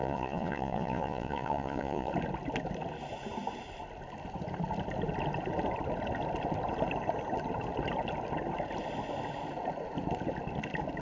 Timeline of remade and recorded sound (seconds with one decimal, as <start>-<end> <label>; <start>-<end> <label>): 0.0-2.1 remade; 2.1-11.0 recorded